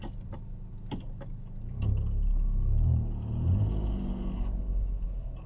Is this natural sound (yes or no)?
yes